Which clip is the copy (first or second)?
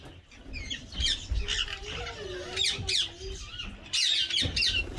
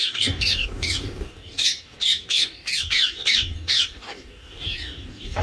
second